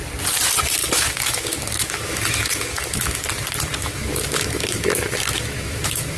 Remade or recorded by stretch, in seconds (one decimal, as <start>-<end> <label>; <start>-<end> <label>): 0.0-0.8 recorded; 0.8-3.2 remade; 3.2-3.8 recorded; 3.8-6.2 remade